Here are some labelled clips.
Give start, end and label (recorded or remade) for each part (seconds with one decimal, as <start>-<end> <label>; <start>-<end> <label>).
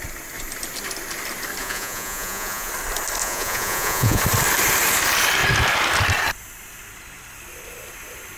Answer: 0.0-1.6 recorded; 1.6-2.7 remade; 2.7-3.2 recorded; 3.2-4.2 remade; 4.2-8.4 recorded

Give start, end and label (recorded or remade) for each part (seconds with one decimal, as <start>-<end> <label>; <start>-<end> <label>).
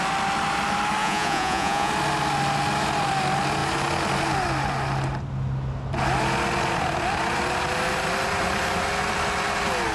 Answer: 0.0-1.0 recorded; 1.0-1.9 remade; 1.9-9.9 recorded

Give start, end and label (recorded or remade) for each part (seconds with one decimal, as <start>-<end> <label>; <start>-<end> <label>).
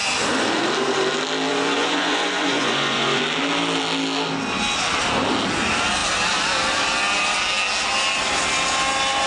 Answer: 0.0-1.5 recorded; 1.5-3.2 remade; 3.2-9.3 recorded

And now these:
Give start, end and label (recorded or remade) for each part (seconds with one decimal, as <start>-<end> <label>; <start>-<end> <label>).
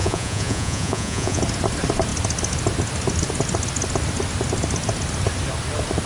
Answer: 0.0-1.4 remade; 1.4-6.1 recorded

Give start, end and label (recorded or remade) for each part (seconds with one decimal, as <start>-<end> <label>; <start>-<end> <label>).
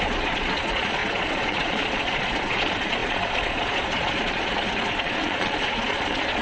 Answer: 0.0-6.4 remade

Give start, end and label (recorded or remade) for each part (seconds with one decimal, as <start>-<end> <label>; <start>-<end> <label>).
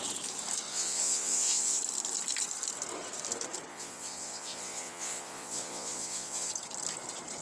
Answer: 0.0-0.7 recorded; 0.7-1.8 remade; 1.8-3.7 recorded; 3.7-6.5 remade; 6.5-7.4 recorded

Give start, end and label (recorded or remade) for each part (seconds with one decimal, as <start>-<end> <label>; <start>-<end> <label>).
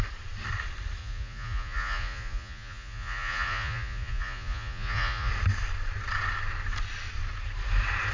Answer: 0.0-1.0 recorded; 1.0-5.3 remade; 5.3-8.1 recorded